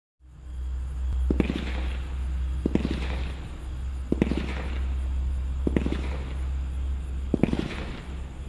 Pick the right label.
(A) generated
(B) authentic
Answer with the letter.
B